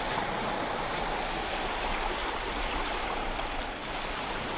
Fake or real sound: real